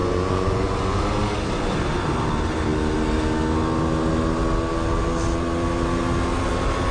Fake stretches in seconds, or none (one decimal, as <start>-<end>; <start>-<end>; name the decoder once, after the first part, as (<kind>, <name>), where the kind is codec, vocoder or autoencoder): 0.0-1.0 (vocoder, Vocos)